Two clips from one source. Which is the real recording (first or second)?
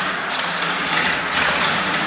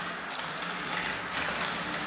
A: second